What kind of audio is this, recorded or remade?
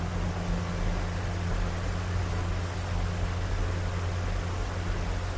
recorded